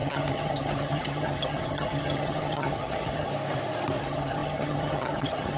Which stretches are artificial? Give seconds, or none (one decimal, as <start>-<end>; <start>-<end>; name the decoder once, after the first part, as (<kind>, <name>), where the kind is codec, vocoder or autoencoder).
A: 0.0-3.3 (vocoder, HiFi-GAN); 4.0-5.6